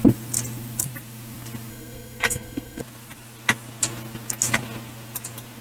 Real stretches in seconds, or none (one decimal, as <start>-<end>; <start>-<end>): 0.0-1.7; 2.8-5.6